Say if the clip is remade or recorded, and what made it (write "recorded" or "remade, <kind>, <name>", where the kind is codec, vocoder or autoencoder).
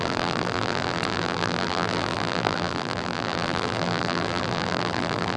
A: remade, vocoder, BigVGAN v2